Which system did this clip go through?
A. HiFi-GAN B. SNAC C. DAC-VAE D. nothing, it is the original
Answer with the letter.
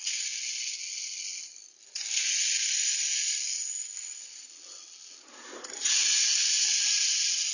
D